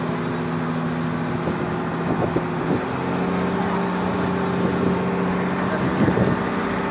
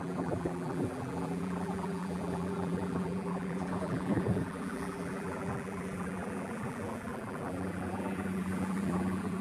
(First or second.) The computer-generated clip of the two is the second